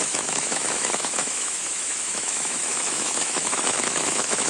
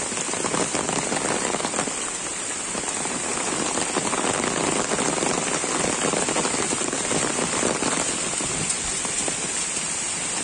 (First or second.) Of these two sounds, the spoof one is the first